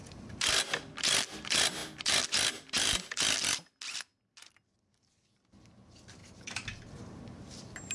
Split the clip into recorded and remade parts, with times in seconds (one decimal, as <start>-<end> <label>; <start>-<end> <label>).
0.0-7.9 recorded